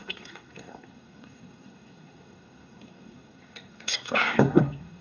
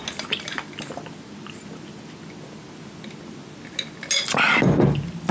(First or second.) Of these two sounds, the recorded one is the second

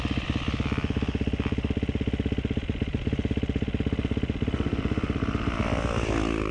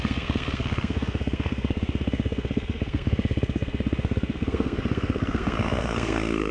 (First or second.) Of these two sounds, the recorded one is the first